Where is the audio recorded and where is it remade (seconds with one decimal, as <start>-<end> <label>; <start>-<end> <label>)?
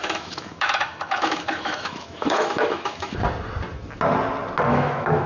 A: 0.0-3.2 remade; 3.2-4.7 recorded; 4.7-5.3 remade